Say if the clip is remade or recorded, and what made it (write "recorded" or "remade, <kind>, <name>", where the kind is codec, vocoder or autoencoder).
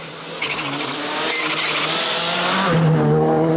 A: recorded